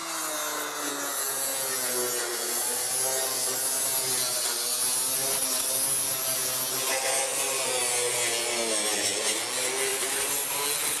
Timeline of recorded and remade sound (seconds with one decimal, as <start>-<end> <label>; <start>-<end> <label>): 0.0-2.3 recorded; 2.3-2.9 remade; 2.9-9.9 recorded; 9.9-10.6 remade; 10.6-11.0 recorded